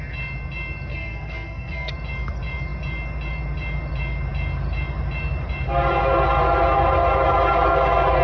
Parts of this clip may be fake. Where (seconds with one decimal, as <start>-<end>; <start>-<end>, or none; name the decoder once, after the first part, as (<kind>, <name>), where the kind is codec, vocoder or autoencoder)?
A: 0.9-1.9 (codec, SNAC)